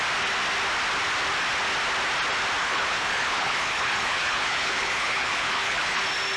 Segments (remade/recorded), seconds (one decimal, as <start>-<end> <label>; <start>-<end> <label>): 0.0-2.6 recorded; 2.6-6.0 remade; 6.0-6.4 recorded